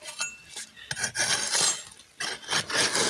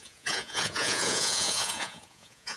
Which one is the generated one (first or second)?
second